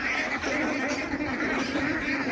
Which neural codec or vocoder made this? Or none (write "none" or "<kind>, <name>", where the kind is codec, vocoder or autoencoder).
none